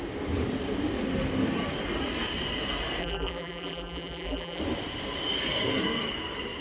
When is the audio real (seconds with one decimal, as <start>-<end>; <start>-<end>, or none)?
0.0-3.0; 4.6-6.6